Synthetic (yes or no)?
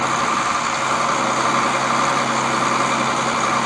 no